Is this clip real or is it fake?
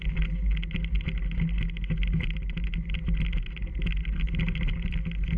real